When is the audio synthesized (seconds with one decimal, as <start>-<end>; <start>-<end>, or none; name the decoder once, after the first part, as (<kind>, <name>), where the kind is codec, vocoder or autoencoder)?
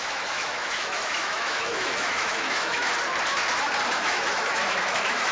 0.0-2.9 (autoencoder, DAC-VAE); 3.9-5.3